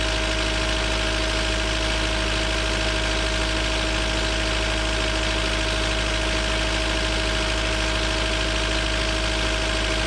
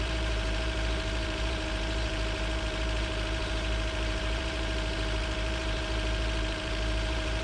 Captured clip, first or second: first